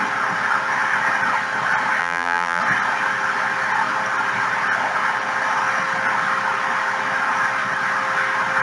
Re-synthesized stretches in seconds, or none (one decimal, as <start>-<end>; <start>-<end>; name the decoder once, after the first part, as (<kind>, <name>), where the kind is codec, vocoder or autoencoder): 2.0-2.6 (vocoder, BigVGAN v2)